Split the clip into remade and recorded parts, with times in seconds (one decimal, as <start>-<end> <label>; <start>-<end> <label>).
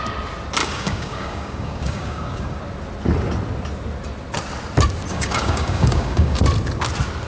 0.0-0.6 recorded; 0.6-2.6 remade; 2.6-5.1 recorded; 5.1-6.4 remade; 6.4-7.3 recorded